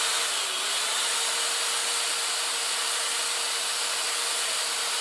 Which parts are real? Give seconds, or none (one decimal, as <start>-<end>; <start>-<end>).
0.0-5.0